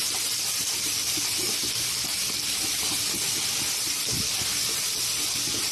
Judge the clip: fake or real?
real